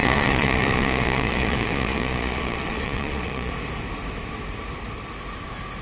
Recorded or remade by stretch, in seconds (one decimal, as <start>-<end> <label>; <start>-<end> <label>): 0.0-3.5 remade; 3.5-5.8 recorded